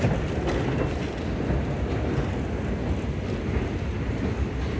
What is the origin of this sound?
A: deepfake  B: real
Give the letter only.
B